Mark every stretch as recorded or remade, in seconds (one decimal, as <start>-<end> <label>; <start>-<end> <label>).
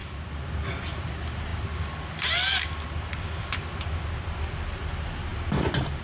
0.0-6.0 recorded